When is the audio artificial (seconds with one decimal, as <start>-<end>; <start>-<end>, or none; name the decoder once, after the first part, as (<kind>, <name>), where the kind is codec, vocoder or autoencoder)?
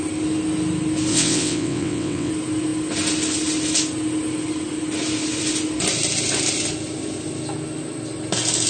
1.1-2.3 (vocoder, WaveNeXt)